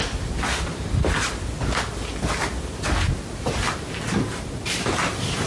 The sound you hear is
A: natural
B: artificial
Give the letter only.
A